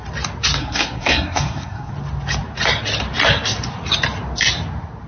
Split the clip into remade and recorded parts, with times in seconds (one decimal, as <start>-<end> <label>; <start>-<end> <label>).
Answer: 0.0-0.6 recorded; 0.6-1.9 remade; 1.9-5.1 recorded